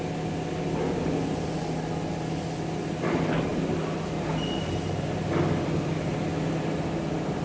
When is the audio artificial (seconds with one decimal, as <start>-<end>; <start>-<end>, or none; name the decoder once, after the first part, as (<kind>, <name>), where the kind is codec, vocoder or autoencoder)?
none